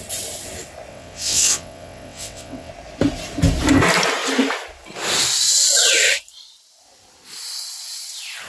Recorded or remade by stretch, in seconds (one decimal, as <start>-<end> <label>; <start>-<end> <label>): 0.0-0.9 recorded; 0.9-2.7 remade; 2.7-8.5 recorded